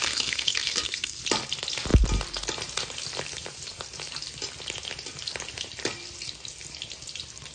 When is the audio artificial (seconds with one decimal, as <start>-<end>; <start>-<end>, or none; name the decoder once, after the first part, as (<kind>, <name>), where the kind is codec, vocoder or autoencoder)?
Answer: 0.0-1.2 (codec, SNAC)